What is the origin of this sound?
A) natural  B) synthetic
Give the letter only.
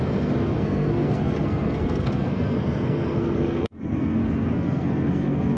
B